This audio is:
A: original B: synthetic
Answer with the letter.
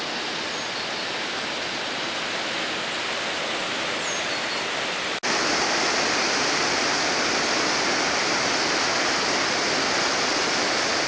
A